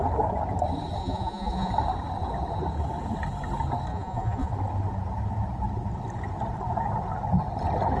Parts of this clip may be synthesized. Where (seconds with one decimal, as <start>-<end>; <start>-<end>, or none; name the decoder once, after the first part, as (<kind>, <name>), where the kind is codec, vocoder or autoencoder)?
1.0-1.7 (vocoder, Vocos); 3.9-4.5